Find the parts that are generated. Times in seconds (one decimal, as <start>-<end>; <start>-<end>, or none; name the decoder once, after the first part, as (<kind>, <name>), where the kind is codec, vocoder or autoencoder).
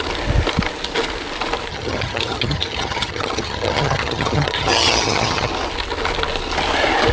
1.7-5.5 (vocoder, HiFi-GAN)